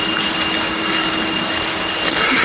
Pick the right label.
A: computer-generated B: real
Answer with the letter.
B